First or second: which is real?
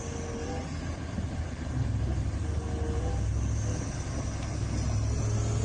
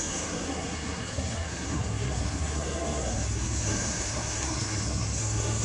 first